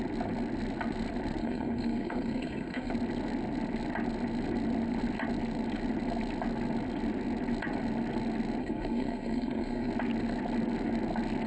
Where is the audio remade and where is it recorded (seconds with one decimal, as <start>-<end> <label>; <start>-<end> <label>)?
0.0-1.4 recorded; 1.4-2.9 remade; 2.9-8.6 recorded; 8.6-9.9 remade; 9.9-11.5 recorded

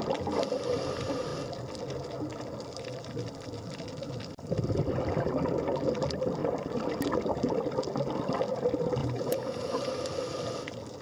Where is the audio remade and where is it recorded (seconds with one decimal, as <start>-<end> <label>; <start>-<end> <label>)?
0.0-9.0 recorded; 9.0-9.9 remade; 9.9-11.0 recorded

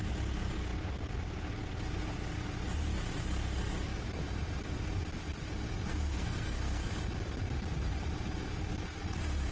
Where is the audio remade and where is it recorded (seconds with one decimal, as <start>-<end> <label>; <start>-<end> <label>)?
0.0-5.9 recorded; 5.9-6.9 remade; 6.9-9.5 recorded

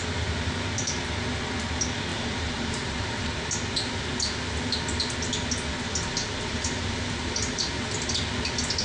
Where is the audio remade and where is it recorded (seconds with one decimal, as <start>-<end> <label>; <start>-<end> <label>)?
0.0-2.1 recorded; 2.1-3.3 remade; 3.3-6.2 recorded; 6.2-7.7 remade; 7.7-8.8 recorded

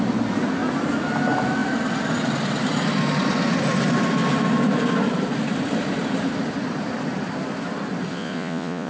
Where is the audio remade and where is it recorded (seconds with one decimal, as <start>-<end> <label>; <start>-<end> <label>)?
0.0-8.1 recorded; 8.1-8.9 remade

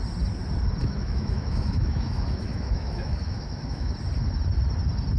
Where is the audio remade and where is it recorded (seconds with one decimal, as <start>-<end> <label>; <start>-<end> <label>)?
0.0-0.8 recorded; 0.8-3.9 remade; 3.9-5.2 recorded